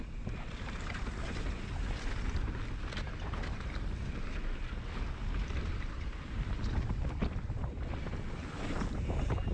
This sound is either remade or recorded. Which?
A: recorded